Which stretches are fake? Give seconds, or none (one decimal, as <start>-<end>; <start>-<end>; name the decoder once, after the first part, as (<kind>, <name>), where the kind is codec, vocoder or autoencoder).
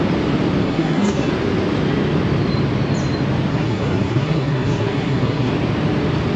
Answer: 0.6-1.3 (codec, SNAC); 3.5-5.5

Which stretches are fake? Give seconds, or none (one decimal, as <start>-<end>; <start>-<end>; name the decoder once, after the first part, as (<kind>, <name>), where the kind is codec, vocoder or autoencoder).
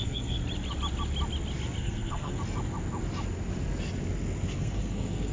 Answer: 0.0-0.4 (codec, SNAC); 1.8-2.3; 4.6-5.3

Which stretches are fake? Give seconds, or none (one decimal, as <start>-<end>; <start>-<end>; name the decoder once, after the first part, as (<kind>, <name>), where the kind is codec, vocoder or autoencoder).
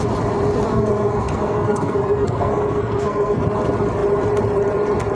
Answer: 0.7-3.4 (codec, SNAC)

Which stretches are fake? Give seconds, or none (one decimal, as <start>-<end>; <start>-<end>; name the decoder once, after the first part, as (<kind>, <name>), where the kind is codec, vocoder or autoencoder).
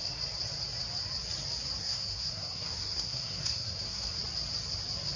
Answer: 1.8-4.1 (codec, SNAC)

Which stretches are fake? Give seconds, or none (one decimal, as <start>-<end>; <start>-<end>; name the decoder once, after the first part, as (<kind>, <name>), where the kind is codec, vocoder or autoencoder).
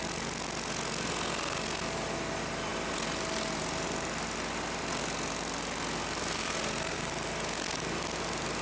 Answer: none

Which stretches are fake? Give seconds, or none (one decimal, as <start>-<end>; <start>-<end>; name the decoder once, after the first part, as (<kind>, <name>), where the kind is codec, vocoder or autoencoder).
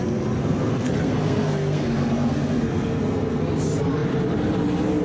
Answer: 0.4-3.4 (codec, SNAC)